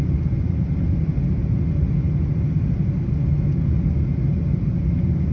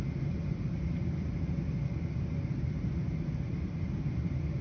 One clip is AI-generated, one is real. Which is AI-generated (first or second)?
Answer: second